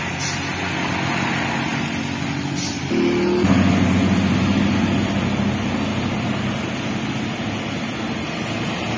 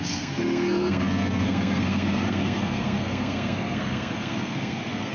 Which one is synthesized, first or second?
second